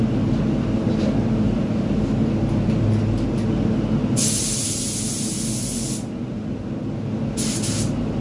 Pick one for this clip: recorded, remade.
recorded